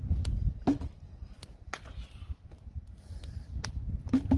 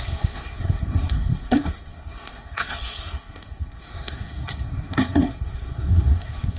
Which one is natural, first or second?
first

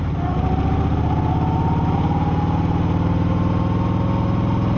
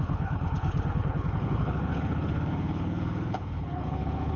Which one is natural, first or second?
first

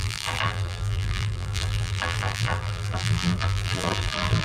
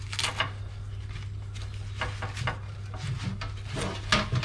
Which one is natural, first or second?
second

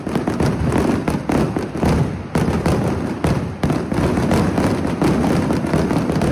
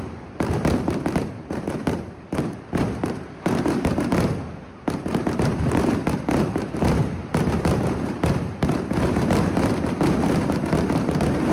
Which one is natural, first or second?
first